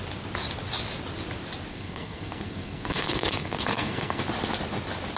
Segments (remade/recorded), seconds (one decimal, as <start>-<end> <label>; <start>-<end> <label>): 0.0-1.7 recorded; 1.7-4.2 remade; 4.2-5.2 recorded